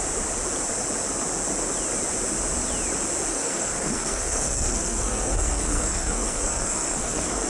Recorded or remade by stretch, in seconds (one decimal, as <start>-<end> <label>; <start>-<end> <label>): 0.0-3.3 recorded; 3.3-7.5 remade